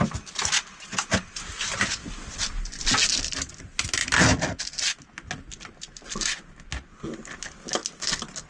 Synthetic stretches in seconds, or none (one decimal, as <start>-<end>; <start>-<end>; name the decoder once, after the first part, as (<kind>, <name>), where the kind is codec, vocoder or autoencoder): none